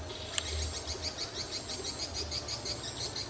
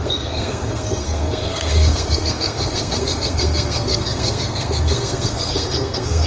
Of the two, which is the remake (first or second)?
second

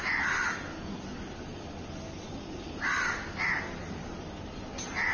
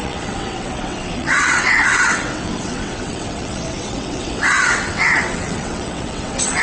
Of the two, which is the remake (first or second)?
second